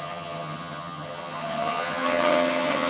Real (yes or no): no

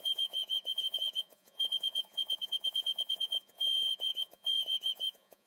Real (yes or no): no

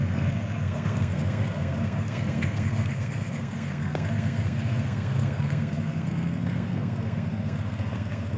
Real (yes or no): no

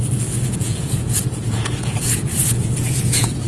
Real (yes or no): no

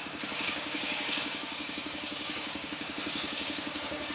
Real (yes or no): no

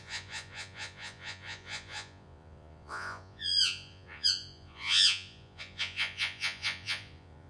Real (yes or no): no